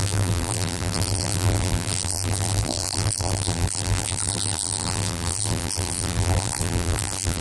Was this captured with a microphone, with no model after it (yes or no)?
no